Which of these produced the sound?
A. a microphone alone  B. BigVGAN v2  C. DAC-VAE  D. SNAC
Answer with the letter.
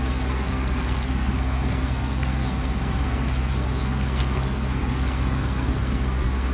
D